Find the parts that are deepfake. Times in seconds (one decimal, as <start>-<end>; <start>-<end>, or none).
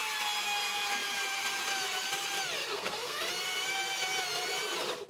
2.6-3.3